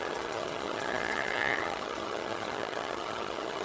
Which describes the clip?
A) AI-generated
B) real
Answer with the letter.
A